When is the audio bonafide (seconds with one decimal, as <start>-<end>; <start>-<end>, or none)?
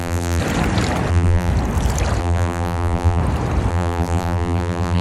0.4-1.1; 1.5-2.2; 3.2-3.7